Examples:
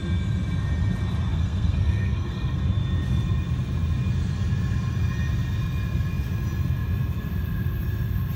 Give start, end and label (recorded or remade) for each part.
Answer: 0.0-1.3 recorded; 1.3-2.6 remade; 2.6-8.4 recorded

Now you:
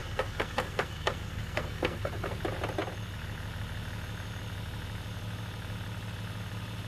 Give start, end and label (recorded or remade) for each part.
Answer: 0.0-2.4 remade; 2.4-6.9 recorded